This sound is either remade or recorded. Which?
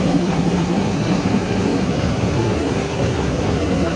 remade